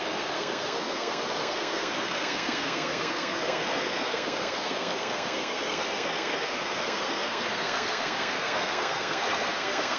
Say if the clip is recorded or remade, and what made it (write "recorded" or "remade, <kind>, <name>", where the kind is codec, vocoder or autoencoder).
remade, codec, SNAC